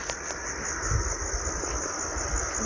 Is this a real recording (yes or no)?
yes